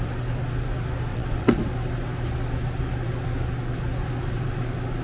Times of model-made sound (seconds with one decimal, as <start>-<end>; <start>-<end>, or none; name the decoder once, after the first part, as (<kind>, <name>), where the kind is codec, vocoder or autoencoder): 1.1-1.6 (vocoder, WaveNeXt)